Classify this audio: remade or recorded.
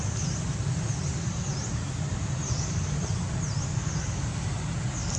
recorded